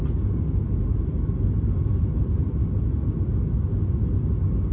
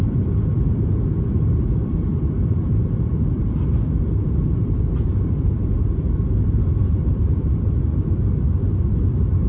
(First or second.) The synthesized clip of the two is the second